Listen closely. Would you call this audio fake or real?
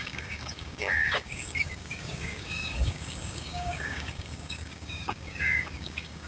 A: fake